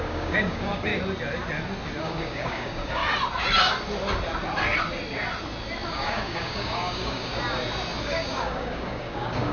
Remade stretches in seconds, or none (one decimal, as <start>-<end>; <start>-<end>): 0.0-0.9; 2.0-3.0; 5.9-7.3; 8.0-9.5